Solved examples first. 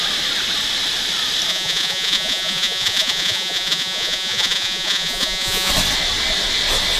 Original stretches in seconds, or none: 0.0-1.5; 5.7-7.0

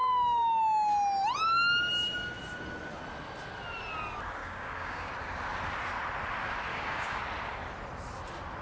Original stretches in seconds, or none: 0.0-4.4; 5.1-6.7; 7.2-8.6

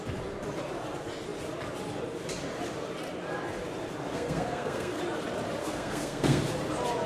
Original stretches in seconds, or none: 0.0-4.1; 5.0-5.6; 6.4-7.1

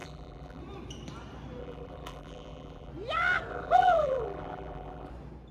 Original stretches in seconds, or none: 0.6-1.6; 2.9-3.5; 5.1-5.5

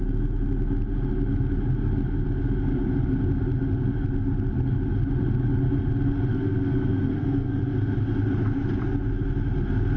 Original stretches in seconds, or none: 0.0-6.3; 7.6-10.0

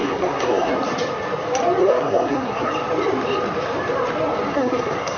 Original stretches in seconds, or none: 0.7-1.8; 2.7-4.5